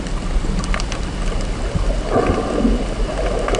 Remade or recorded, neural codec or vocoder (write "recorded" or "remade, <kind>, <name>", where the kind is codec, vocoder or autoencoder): recorded